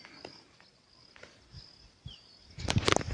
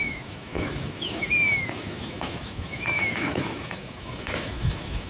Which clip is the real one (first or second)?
first